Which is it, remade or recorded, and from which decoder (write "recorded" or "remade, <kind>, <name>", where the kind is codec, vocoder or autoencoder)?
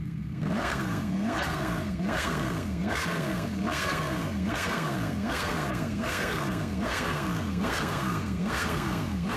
remade, codec, SNAC